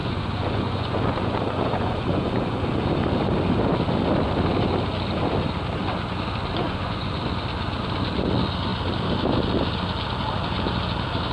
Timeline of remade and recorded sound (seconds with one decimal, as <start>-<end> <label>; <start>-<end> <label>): 0.0-2.6 remade; 2.6-6.6 recorded; 6.6-7.2 remade; 7.2-11.3 recorded